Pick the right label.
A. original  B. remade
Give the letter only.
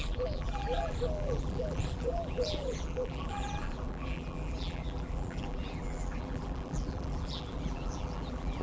B